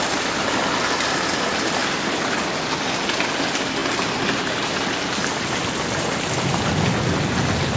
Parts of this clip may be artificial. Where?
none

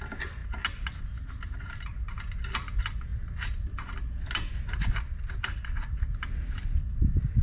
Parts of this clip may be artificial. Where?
none

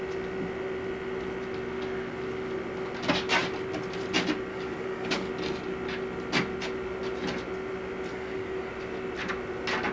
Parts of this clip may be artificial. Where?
4.5-5.3 (codec, DAC); 8.1-8.7

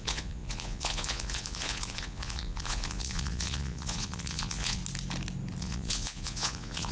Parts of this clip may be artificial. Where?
0.0-4.8 (vocoder, Vocos); 5.6-6.9

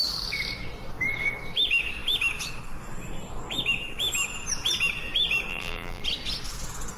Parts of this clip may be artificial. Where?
5.5-6.0 (vocoder, BigVGAN v2)

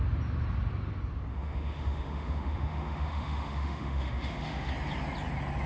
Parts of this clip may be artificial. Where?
1.3-4.7 (autoencoder, DAC-VAE)

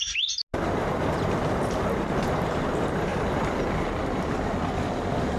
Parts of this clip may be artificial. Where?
none

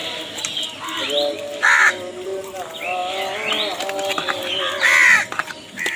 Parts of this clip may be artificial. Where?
0.0-3.0 (vocoder, BigVGAN v2); 3.8-6.0